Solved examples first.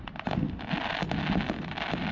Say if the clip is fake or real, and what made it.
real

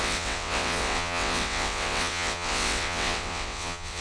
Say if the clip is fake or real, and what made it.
fake, vocoder, WaveNeXt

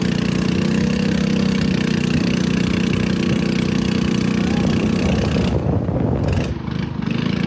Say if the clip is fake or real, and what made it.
real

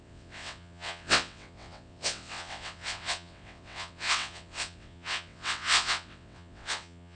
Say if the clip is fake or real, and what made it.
fake, vocoder, WaveNeXt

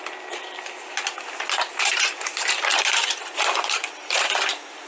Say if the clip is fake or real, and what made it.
real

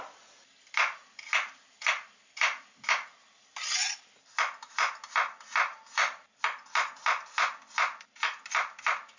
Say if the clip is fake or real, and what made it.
real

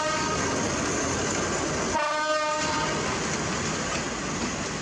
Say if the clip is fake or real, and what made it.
real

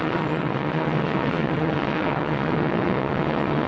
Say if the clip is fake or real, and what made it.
fake, vocoder, WaveNeXt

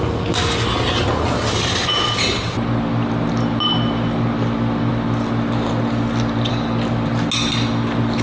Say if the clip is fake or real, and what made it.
real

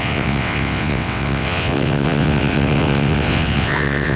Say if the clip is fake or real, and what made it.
fake, vocoder, WaveNeXt